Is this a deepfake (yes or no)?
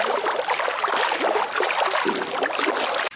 no